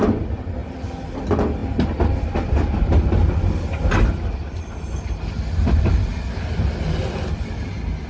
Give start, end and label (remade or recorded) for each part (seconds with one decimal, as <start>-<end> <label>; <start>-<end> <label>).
0.0-1.6 recorded; 1.6-5.8 remade; 5.8-8.1 recorded

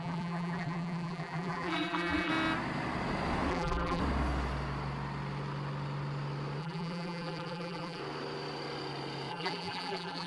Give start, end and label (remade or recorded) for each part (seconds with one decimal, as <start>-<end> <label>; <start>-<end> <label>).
0.0-2.3 remade; 2.3-3.5 recorded; 3.5-4.0 remade; 4.0-6.6 recorded; 6.6-8.0 remade; 8.0-9.3 recorded; 9.3-10.3 remade